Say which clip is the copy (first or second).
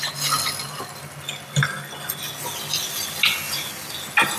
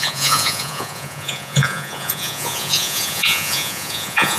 second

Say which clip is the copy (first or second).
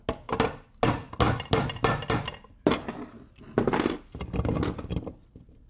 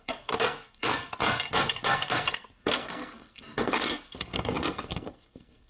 second